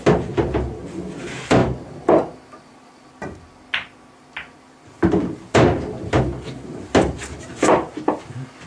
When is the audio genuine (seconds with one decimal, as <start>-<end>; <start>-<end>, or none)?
0.0-8.7

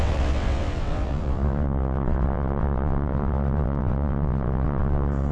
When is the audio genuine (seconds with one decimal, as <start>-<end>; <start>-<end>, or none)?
none

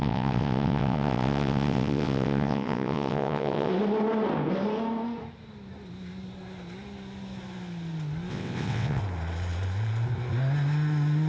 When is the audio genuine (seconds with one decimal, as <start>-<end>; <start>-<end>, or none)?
3.7-8.3; 9.0-11.3